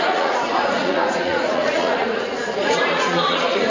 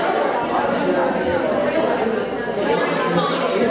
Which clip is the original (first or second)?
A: second